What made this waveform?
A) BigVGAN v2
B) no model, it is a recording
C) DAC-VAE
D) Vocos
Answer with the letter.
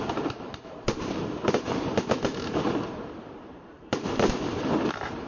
A